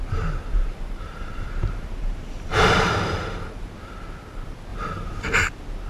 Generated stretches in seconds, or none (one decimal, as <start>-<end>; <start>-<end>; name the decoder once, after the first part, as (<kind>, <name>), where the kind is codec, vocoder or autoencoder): 0.5-3.9 (vocoder, BigVGAN v2); 4.7-5.4